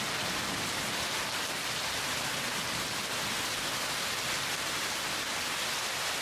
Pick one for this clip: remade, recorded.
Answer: recorded